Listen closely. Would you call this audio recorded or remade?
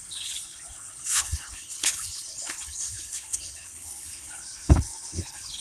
remade